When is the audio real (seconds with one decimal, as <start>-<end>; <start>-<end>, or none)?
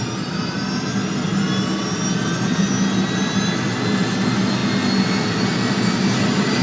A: 0.0-6.6